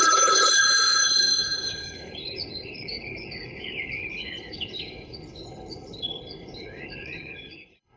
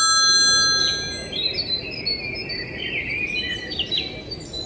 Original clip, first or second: second